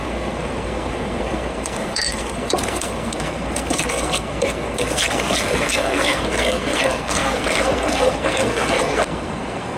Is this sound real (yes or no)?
no